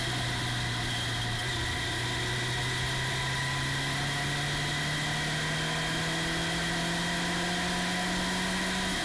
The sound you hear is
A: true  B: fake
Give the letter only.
A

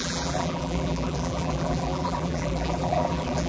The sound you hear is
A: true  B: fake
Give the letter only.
B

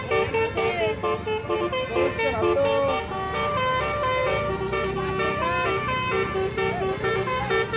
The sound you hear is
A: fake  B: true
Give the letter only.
B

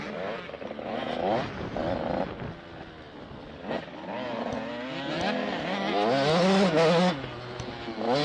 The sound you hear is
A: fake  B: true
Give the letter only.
B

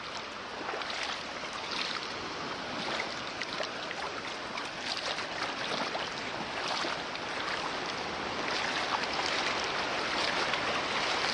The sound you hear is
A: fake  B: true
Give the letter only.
B